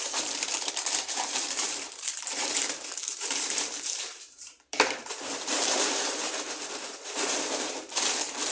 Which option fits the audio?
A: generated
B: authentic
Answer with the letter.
A